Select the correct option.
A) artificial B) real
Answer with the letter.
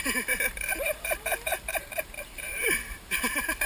A